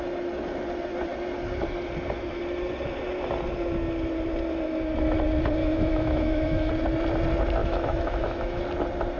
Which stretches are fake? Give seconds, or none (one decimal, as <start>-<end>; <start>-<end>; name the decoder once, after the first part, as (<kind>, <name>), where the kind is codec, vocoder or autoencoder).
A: 5.6-6.7 (autoencoder, DAC-VAE); 7.6-8.6